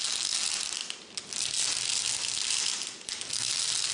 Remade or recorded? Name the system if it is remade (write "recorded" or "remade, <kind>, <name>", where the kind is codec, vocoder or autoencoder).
recorded